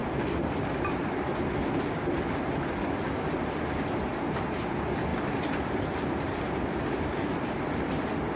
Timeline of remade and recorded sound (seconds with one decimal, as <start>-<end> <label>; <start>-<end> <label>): 0.0-8.4 remade